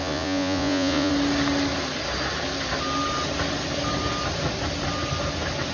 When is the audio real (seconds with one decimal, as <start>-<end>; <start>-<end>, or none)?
1.1-5.7